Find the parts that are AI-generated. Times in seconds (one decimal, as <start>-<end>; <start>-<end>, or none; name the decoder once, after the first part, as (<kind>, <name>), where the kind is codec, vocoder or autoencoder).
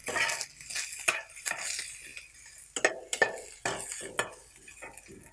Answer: none